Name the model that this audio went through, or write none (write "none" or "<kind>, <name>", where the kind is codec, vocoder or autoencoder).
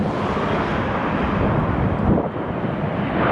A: none